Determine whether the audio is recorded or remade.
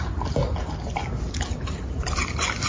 recorded